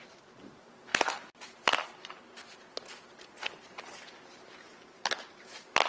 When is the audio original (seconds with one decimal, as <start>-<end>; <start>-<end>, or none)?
0.9-4.4